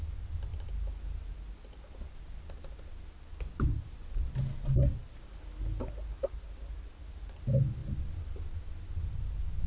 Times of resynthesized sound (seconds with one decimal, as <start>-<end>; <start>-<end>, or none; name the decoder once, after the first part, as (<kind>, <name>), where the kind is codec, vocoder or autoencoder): none